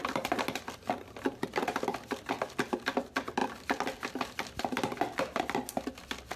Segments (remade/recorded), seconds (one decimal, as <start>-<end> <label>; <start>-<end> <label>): 0.0-6.4 recorded